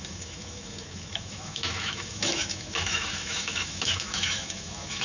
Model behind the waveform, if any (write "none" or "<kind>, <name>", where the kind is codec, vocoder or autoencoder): autoencoder, DAC-VAE